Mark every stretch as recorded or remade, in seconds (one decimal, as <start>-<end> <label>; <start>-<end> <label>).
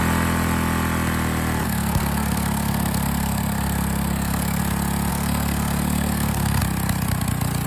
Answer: 0.0-1.6 recorded; 1.6-4.6 remade; 4.6-5.1 recorded; 5.1-6.6 remade; 6.6-7.7 recorded